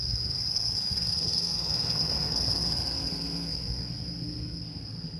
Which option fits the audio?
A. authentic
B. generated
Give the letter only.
B